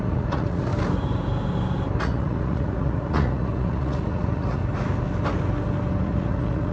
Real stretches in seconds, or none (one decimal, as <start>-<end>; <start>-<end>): 0.7-2.0; 4.6-6.0